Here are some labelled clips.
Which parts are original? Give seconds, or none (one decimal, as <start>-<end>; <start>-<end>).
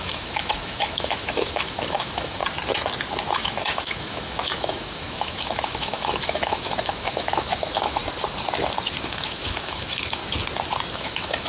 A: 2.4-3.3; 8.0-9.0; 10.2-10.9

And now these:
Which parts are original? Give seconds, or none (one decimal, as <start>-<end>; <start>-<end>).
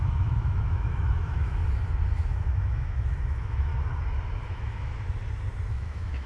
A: 1.6-2.2; 3.7-4.5; 4.9-5.7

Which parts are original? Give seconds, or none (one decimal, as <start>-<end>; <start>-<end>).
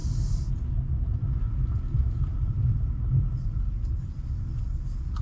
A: 0.0-5.2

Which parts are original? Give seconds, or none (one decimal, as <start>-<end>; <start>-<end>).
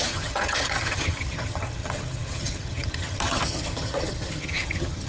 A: none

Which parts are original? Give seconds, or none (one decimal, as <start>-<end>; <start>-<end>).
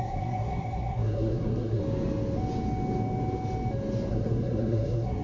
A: 1.8-4.1